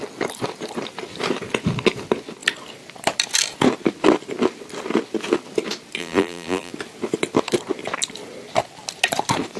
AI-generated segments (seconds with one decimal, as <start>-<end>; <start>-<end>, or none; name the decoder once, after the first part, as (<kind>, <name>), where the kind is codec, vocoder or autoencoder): 6.0-6.7 (vocoder, BigVGAN v2)